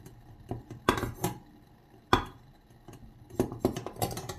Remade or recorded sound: recorded